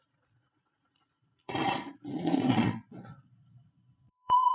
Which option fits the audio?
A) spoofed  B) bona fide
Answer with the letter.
A